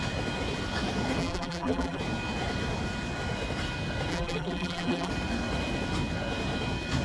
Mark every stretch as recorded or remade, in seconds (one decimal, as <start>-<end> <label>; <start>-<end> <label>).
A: 0.0-1.2 recorded; 1.2-2.0 remade; 2.0-4.1 recorded; 4.1-5.1 remade; 5.1-7.0 recorded